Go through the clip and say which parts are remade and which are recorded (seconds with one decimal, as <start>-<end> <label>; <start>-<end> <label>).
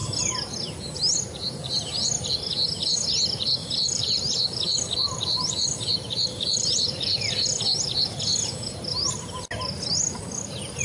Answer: 0.0-3.6 recorded; 3.6-7.6 remade; 7.6-10.8 recorded